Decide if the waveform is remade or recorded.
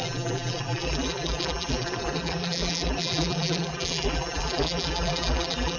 remade